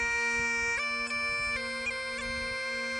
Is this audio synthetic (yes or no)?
no